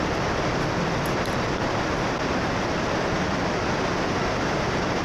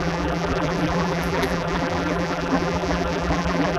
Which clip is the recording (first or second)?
first